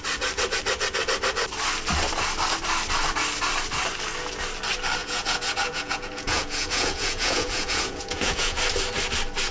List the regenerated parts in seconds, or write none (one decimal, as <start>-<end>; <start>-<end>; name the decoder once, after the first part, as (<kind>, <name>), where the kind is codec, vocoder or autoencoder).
5.0-8.6 (vocoder, Vocos)